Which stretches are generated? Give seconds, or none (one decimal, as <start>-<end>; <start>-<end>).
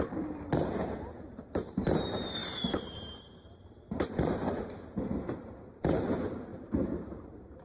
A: 0.0-7.6